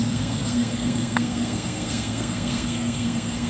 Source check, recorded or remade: remade